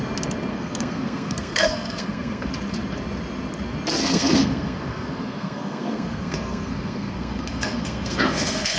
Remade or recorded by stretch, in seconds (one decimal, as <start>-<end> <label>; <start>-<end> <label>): 0.0-0.5 recorded; 0.5-2.5 remade; 2.5-4.0 recorded; 4.0-8.8 remade